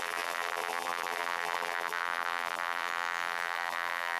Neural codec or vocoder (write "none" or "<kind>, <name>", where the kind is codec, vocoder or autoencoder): vocoder, BigVGAN v2